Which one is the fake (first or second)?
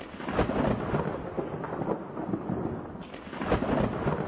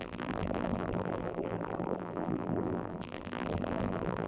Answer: second